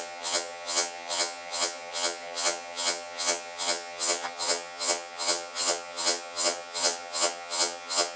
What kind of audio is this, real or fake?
fake